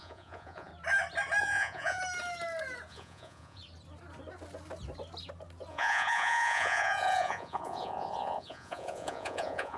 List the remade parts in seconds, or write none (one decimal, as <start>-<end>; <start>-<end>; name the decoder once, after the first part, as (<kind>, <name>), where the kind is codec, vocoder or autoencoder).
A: 0.0-0.7 (vocoder, Vocos); 1.4-2.0; 2.9-3.6; 5.7-9.8